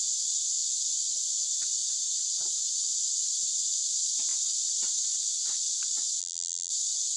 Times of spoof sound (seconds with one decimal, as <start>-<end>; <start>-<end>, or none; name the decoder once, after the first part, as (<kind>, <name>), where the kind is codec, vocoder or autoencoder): 6.2-6.7 (vocoder, BigVGAN v2)